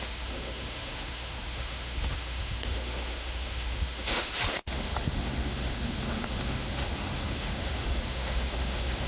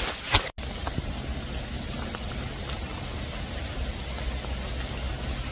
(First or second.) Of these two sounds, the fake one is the first